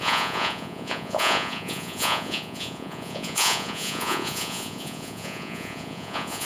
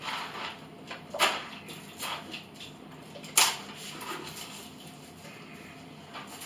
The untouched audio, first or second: second